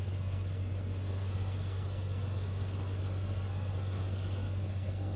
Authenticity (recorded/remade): remade